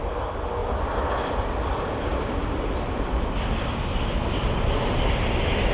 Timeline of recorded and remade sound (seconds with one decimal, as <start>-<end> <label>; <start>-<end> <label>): 0.0-5.7 recorded